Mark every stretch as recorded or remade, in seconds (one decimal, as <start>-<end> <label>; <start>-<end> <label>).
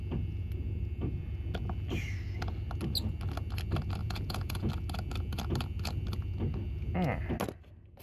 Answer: 0.0-4.0 recorded; 4.0-4.7 remade; 4.7-8.0 recorded